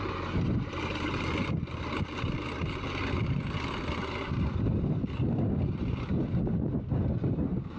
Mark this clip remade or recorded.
recorded